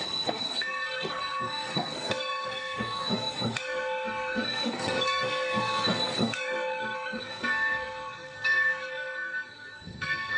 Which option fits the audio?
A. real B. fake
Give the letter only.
B